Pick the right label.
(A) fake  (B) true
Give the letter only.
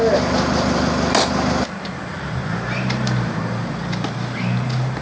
B